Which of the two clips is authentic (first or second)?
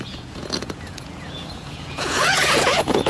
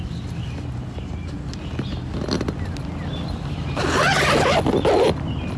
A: second